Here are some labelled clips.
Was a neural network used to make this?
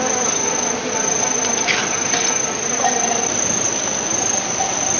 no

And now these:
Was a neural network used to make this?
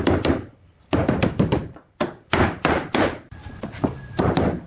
no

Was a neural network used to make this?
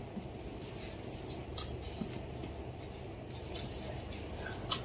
no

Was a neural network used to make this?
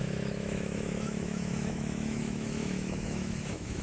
yes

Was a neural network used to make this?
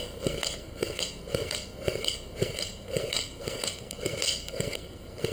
yes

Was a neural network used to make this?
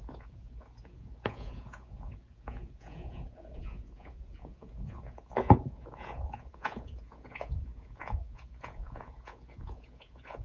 yes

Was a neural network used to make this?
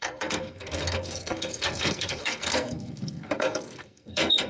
yes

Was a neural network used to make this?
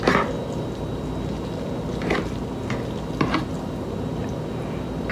no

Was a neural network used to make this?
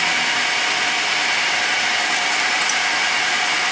no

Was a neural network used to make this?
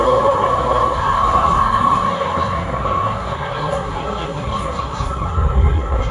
yes